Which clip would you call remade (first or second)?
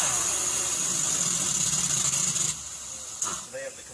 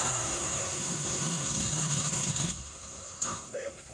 second